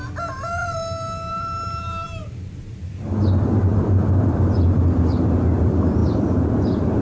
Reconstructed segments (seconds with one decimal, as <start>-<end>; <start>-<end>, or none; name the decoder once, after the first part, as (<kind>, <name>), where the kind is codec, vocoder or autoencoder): 0.6-4.8 (vocoder, BigVGAN v2)

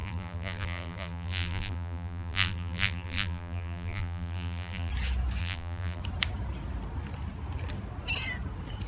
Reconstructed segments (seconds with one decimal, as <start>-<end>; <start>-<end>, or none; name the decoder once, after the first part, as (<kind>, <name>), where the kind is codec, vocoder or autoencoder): 0.0-4.9 (vocoder, BigVGAN v2); 5.4-6.0

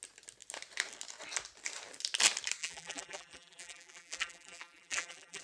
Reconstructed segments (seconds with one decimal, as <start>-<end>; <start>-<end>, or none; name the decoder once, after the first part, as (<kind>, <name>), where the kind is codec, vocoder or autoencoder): 2.6-5.4 (vocoder, BigVGAN v2)

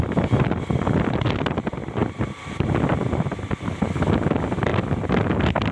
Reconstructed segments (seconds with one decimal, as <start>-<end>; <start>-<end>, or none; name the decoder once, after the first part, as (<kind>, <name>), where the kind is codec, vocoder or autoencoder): 2.0-3.1 (vocoder, BigVGAN v2)

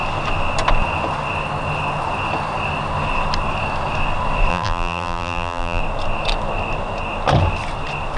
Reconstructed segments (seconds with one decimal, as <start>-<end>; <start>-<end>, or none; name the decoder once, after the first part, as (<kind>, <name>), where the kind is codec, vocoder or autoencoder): 4.5-5.8 (vocoder, BigVGAN v2)

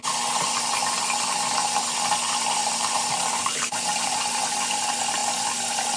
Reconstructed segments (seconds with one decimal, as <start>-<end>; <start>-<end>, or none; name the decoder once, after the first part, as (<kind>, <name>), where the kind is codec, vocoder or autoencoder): 2.6-4.4 (vocoder, BigVGAN v2)